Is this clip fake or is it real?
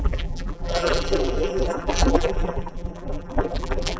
fake